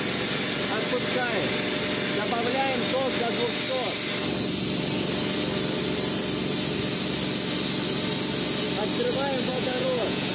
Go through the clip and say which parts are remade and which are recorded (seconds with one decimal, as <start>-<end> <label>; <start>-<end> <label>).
0.0-9.5 recorded; 9.5-10.3 remade